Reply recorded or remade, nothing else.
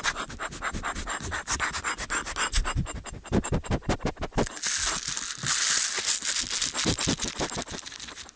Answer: recorded